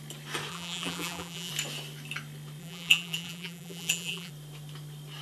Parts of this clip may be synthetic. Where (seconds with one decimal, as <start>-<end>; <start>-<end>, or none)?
0.5-1.5; 2.6-4.3